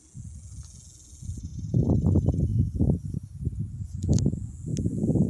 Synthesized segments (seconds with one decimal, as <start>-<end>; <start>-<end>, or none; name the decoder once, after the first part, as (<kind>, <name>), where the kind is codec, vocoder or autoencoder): none